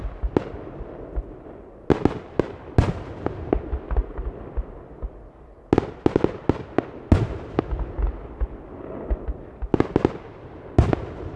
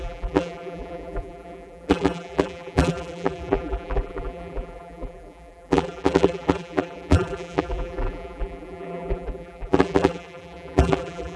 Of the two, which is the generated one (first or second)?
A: second